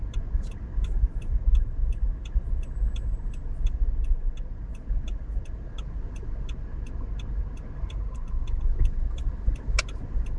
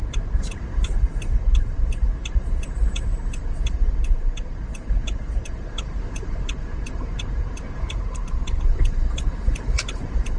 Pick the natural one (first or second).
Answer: first